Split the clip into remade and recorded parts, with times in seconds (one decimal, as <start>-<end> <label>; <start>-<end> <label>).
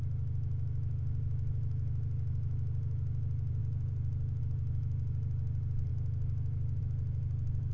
0.0-7.7 recorded